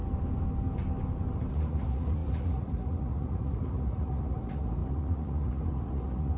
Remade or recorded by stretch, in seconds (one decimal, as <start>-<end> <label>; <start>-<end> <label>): 0.0-1.5 recorded; 1.5-6.4 remade